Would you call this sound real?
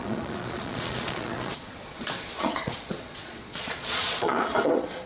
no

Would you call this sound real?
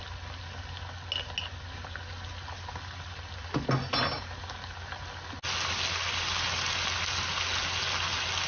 yes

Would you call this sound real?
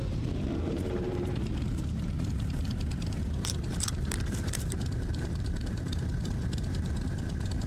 no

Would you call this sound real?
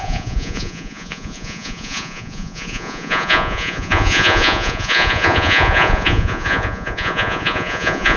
no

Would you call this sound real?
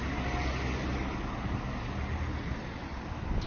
yes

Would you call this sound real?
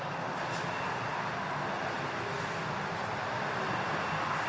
yes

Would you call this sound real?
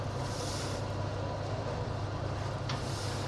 yes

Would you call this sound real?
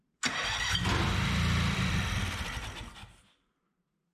yes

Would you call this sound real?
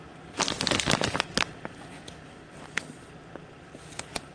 yes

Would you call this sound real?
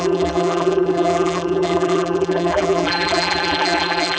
no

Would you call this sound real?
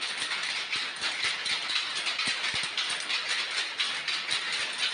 yes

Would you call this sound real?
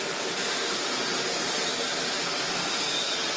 yes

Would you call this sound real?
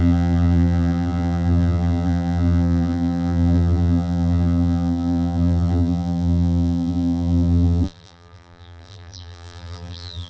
no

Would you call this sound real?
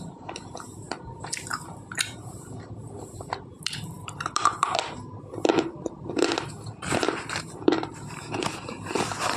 no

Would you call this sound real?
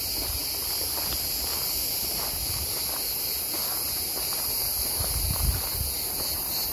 yes